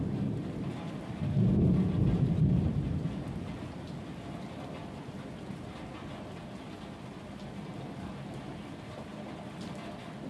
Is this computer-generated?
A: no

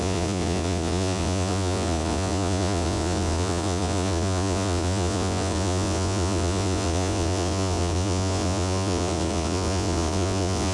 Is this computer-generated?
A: yes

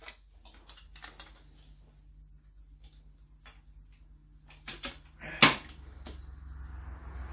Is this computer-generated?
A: no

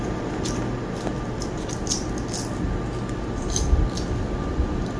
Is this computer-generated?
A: no